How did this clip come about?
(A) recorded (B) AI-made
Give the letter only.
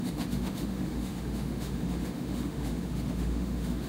B